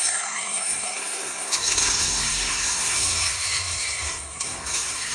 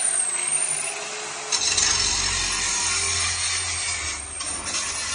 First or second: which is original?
second